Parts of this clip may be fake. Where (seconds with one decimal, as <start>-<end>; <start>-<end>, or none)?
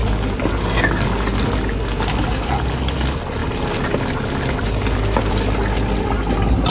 none